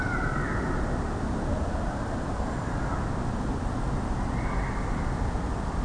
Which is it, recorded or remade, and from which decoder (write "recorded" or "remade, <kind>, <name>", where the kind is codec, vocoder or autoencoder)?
recorded